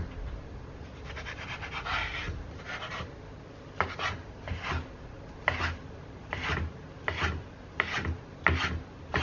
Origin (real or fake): real